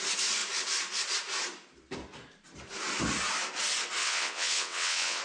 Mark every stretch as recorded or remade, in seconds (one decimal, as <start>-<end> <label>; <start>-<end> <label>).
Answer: 0.0-4.0 recorded; 4.0-5.2 remade